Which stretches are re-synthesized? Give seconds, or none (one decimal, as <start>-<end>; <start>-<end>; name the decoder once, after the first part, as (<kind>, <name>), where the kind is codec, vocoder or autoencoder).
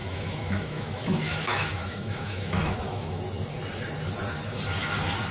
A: 0.0-3.2 (autoencoder, DAC-VAE)